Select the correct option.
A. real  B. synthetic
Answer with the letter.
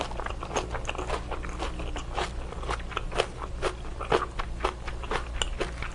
A